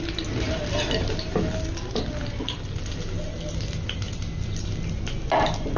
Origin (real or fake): real